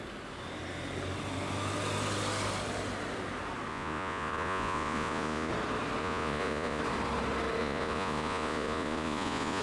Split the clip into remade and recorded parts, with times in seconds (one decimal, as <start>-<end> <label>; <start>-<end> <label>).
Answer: 0.0-3.7 recorded; 3.7-5.5 remade; 5.5-6.0 recorded; 6.0-6.8 remade; 6.8-7.6 recorded; 7.6-9.6 remade